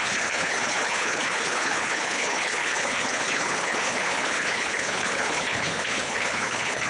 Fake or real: fake